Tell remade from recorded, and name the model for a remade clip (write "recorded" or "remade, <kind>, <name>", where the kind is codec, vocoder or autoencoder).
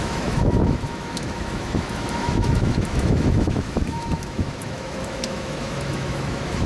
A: remade, autoencoder, DAC-VAE